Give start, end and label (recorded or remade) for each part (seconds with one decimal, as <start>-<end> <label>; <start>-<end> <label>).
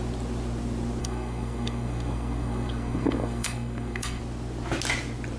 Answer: 0.0-1.0 recorded; 1.0-4.2 remade; 4.2-5.4 recorded